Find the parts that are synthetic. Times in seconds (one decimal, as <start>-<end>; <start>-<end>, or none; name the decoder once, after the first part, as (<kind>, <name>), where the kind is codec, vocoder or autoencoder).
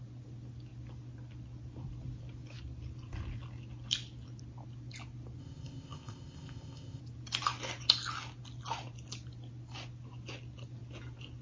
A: 5.4-7.0 (codec, ZipCodec)